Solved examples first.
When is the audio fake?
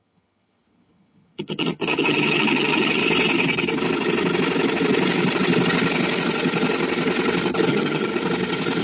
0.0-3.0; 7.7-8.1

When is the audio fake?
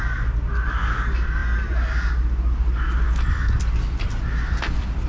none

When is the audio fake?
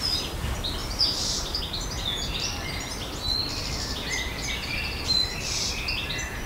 0.8-1.6